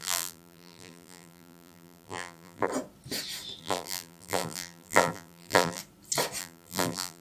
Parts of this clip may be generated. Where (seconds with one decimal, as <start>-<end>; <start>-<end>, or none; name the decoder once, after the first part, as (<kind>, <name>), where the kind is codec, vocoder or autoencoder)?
0.0-2.7 (vocoder, BigVGAN v2); 3.6-5.8; 6.4-7.2

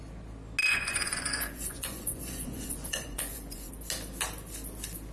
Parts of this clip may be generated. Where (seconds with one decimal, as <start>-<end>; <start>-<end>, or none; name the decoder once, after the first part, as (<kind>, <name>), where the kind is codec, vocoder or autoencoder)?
0.6-3.7 (vocoder, Vocos)